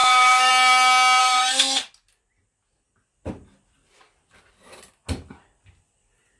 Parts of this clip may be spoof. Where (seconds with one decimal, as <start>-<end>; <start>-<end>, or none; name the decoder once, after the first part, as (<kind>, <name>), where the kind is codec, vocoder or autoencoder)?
0.0-0.5 (codec, SNAC); 1.2-1.8